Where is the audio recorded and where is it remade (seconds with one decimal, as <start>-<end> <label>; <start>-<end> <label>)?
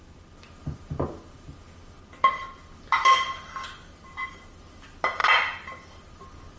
0.0-6.6 recorded